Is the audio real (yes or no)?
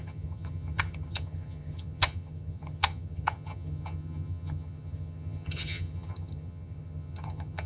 no